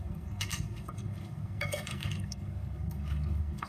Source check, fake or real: fake